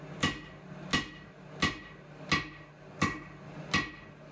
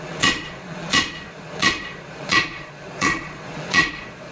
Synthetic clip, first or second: second